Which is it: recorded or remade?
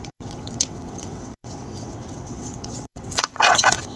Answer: remade